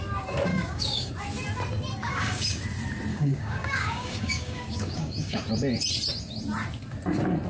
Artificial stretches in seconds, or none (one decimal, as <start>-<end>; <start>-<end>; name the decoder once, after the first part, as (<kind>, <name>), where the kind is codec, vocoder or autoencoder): 0.5-1.1 (codec, DAC); 2.0-2.6; 3.1-5.4